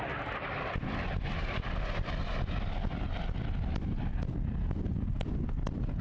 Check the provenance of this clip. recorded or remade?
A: recorded